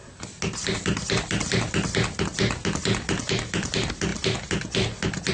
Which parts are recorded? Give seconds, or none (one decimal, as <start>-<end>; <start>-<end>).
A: 0.0-5.3